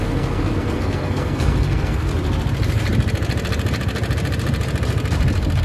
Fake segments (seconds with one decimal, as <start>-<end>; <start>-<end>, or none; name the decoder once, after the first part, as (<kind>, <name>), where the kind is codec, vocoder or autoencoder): 0.0-2.1 (codec, SNAC)